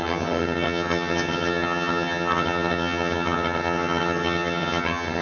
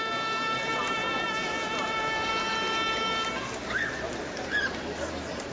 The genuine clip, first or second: second